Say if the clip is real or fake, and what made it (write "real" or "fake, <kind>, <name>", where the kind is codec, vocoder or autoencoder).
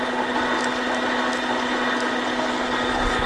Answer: real